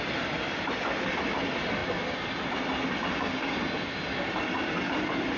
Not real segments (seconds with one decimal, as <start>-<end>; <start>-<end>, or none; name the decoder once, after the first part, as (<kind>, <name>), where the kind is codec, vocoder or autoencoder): none